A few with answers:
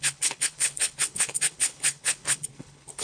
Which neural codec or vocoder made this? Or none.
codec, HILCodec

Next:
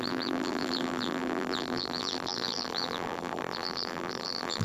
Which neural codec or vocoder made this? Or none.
vocoder, BigVGAN v2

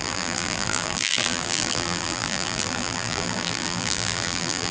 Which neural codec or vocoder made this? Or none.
vocoder, BigVGAN v2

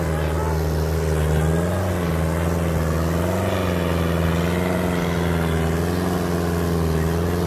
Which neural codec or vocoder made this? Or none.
none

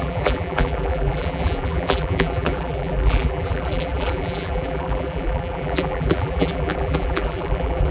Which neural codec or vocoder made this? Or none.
vocoder, BigVGAN v2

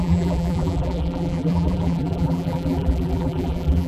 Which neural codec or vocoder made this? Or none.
vocoder, BigVGAN v2